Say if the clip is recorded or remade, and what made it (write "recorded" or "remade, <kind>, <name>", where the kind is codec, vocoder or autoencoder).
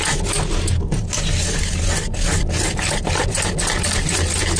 recorded